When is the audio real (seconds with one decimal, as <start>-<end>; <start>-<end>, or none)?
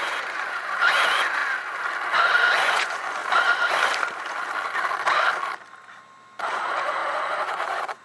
1.4-2.1; 3.2-6.4